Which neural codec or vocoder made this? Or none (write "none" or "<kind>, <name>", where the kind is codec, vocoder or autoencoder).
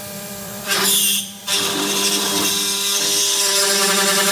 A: vocoder, BigVGAN v2